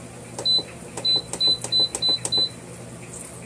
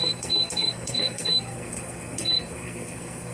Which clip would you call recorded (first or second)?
first